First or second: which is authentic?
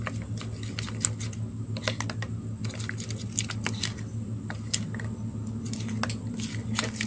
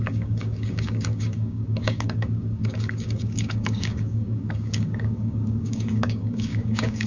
first